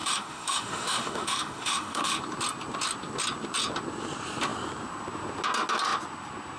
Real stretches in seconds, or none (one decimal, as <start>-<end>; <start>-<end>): 2.2-6.6